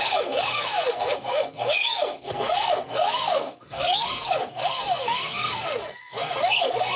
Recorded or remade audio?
remade